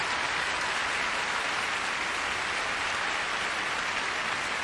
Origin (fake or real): real